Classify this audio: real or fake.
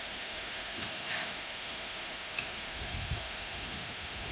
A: fake